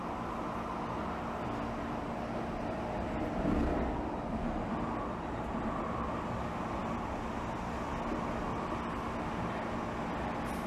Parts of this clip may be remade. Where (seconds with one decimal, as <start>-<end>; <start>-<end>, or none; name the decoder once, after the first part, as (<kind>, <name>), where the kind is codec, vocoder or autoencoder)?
none